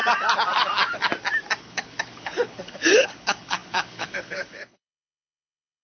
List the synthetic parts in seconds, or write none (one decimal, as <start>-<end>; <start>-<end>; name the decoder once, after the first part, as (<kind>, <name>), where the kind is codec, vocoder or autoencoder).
1.6-5.8 (codec, HILCodec)